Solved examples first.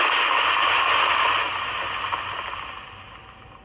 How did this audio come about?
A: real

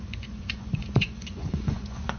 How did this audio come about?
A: fake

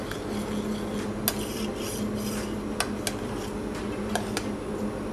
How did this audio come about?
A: real